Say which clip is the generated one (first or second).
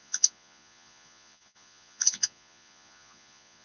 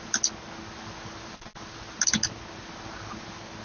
first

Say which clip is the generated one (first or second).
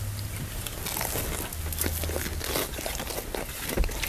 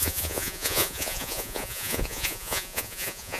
second